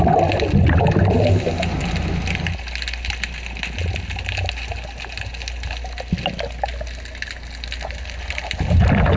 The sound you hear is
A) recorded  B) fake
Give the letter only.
A